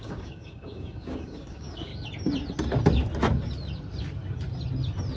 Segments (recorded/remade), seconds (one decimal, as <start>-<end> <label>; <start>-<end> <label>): 0.0-1.9 remade; 1.9-5.2 recorded